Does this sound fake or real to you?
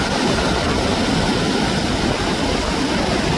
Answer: real